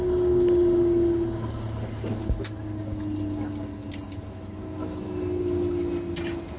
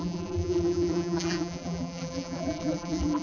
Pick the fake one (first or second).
second